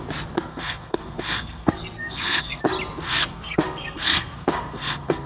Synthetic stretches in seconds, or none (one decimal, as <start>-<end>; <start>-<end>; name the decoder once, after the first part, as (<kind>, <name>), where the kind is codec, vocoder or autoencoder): 0.5-2.6 (codec, SNAC); 3.0-5.3